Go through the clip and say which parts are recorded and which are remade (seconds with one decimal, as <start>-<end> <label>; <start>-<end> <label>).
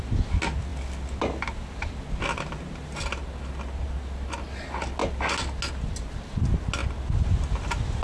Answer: 0.0-8.0 recorded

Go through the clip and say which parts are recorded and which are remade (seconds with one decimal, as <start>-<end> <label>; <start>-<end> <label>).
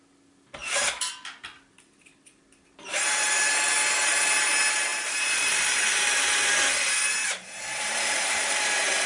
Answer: 0.0-0.6 recorded; 0.6-1.1 remade; 1.1-3.1 recorded; 3.1-3.7 remade; 3.7-4.9 recorded; 4.9-6.5 remade; 6.5-7.1 recorded; 7.1-8.6 remade; 8.6-9.1 recorded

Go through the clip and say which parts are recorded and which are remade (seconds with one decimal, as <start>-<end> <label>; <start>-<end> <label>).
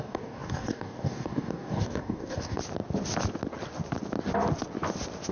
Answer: 0.0-2.6 remade; 2.6-5.3 recorded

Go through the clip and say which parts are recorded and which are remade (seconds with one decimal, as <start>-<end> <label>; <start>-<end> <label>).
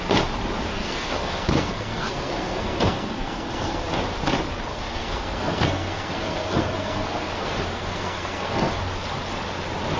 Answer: 0.0-0.7 recorded; 0.7-4.0 remade; 4.0-4.7 recorded; 4.7-8.8 remade; 8.8-10.0 recorded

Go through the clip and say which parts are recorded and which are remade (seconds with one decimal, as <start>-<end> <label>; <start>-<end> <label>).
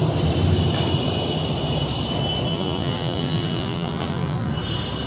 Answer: 0.0-2.5 recorded; 2.5-4.5 remade; 4.5-5.1 recorded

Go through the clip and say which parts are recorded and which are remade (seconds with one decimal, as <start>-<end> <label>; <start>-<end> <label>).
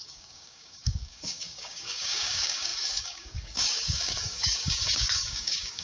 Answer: 0.0-5.8 remade